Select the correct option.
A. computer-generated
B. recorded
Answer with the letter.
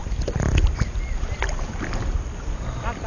B